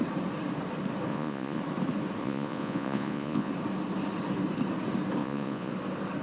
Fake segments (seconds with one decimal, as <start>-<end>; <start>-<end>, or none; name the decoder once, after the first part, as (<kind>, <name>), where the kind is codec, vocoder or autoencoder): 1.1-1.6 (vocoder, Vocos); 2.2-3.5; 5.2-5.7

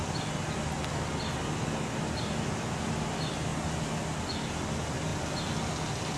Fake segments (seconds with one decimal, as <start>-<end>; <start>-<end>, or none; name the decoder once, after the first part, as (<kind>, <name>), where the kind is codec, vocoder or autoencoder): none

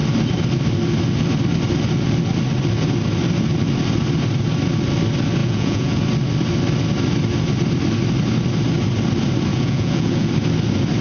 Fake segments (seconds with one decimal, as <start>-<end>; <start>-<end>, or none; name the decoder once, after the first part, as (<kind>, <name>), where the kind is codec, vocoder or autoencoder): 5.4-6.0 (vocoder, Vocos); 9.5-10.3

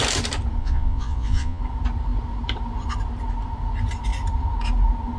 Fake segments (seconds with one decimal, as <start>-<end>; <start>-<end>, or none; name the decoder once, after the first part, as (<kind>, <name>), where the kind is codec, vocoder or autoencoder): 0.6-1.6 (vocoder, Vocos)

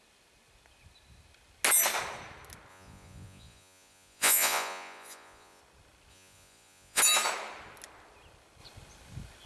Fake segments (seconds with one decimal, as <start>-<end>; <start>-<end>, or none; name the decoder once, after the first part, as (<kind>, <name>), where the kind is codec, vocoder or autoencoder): 2.7-5.6 (vocoder, Vocos); 6.1-7.0

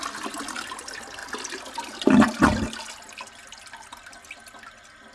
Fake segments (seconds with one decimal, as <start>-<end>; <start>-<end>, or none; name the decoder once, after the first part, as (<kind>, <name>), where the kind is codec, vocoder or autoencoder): none

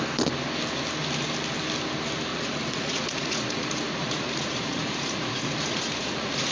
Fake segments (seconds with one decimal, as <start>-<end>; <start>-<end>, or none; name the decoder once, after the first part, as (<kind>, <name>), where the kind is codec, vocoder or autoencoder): 2.3-6.5 (vocoder, Vocos)